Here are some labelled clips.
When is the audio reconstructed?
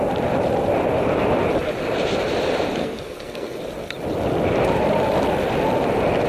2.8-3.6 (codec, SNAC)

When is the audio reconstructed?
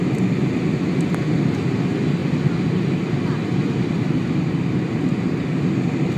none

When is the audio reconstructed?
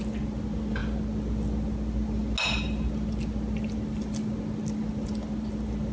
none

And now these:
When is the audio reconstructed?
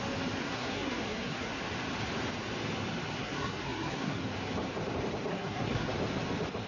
0.4-1.6 (codec, SNAC); 3.1-4.2; 5.3-5.9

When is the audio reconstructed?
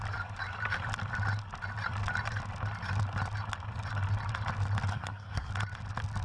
4.9-5.5 (codec, SNAC)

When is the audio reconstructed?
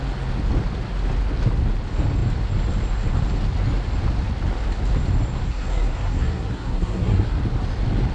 5.4-7.4 (codec, SNAC)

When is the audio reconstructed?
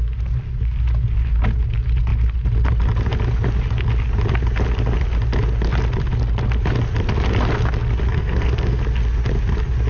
8.1-8.8 (codec, SNAC)